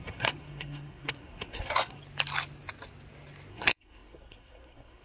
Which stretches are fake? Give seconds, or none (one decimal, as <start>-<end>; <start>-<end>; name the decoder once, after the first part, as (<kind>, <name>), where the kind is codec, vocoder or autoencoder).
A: 0.0-2.0 (codec, SNAC); 3.5-5.0